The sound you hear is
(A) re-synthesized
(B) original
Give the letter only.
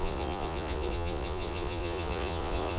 A